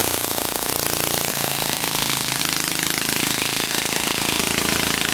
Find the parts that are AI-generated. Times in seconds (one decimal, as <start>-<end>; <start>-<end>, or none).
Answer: 0.0-0.7; 1.3-2.4; 3.2-4.4